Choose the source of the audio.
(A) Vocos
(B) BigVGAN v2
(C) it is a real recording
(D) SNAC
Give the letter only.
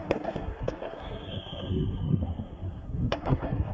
D